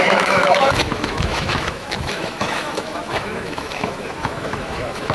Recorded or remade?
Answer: remade